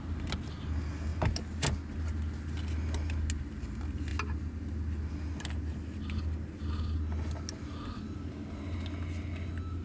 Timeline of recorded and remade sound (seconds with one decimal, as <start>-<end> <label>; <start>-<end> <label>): 0.0-9.8 recorded